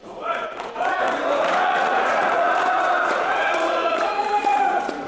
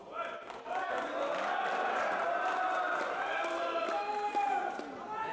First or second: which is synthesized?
first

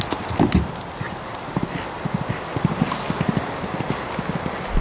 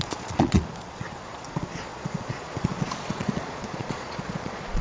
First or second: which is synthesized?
second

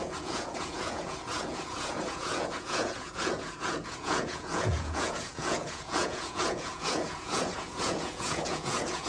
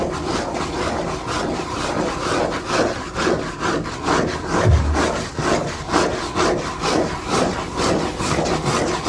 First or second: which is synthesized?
first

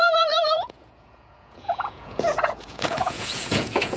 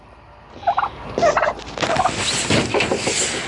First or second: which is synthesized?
first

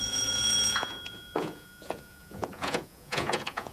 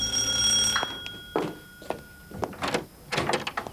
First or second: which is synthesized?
first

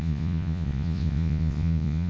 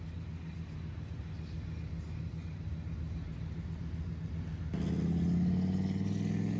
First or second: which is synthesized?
first